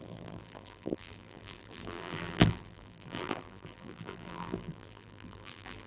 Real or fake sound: fake